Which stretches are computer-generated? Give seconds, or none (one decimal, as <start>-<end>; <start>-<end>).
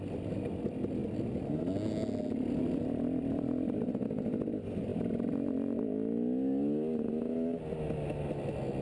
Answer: none